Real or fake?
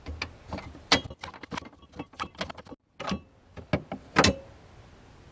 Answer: real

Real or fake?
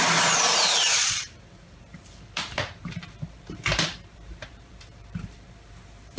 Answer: fake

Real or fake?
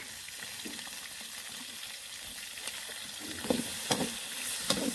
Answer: real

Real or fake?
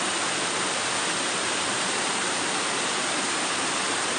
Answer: real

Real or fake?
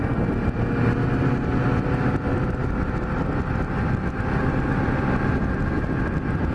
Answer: real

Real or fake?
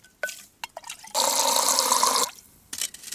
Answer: real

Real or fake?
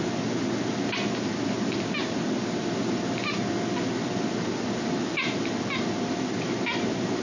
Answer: real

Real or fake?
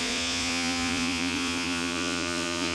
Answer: fake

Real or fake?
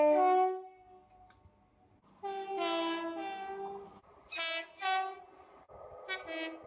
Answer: real